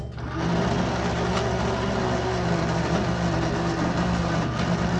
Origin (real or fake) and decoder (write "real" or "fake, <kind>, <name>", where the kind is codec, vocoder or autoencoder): real